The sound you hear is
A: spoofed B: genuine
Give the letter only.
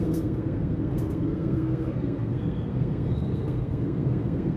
A